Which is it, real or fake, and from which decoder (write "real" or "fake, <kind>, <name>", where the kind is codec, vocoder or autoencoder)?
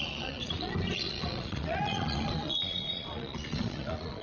fake, vocoder, Vocos